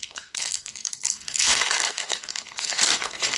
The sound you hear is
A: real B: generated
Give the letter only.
B